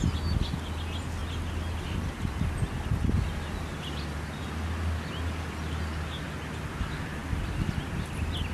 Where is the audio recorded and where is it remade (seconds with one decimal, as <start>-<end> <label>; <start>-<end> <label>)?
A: 0.0-8.5 recorded